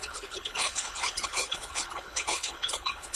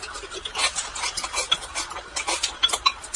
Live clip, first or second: second